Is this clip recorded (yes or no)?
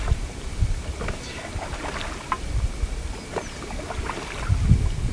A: yes